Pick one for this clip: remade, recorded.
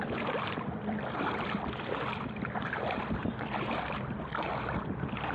remade